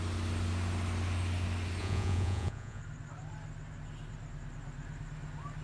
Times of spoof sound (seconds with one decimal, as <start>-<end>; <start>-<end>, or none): 1.8-2.8